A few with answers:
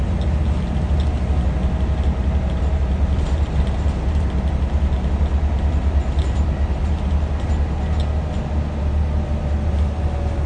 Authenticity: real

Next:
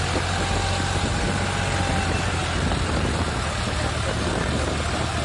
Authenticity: real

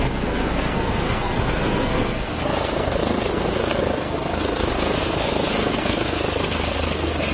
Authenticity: fake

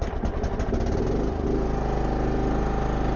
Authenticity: real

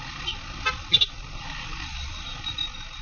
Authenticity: real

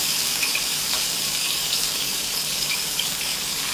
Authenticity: fake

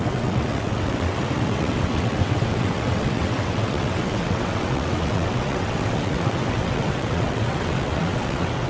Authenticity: fake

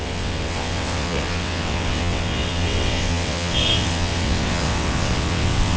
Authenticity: fake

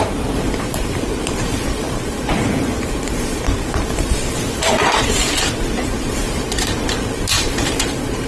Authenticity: fake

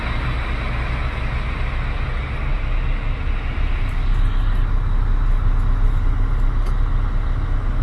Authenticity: real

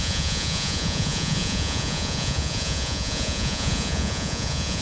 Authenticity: fake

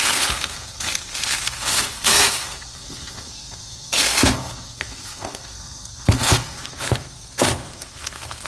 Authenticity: fake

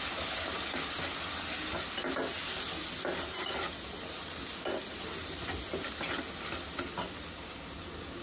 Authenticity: real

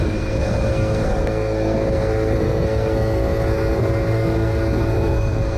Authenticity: fake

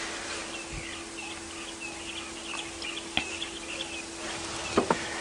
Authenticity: real